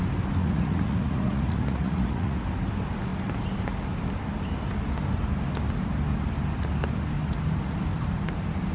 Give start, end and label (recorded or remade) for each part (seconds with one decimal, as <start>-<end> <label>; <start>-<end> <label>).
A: 0.0-0.4 recorded; 0.4-2.4 remade; 2.4-8.7 recorded